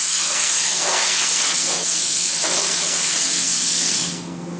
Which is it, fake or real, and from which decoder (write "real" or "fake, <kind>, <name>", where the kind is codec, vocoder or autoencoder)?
fake, codec, SNAC